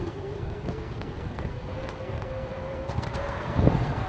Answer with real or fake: fake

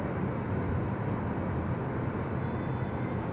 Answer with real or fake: real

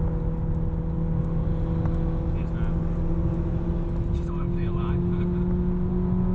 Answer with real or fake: real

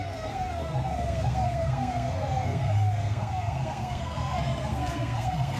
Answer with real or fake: fake